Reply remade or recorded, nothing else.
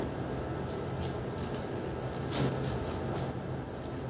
recorded